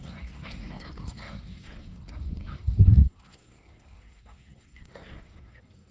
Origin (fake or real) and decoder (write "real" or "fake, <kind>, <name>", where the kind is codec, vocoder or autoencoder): fake, codec, SNAC